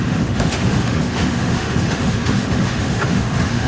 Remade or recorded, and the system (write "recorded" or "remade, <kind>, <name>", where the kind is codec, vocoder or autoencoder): remade, autoencoder, DAC-VAE